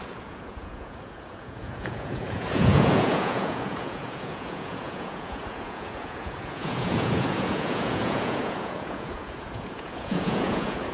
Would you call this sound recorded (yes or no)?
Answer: no